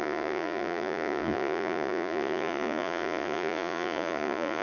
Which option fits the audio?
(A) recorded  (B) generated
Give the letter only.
B